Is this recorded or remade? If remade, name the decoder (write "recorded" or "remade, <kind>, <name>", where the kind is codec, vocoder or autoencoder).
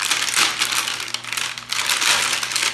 recorded